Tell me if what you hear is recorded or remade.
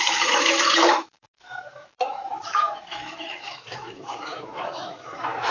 remade